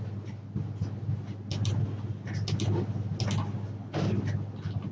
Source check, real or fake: real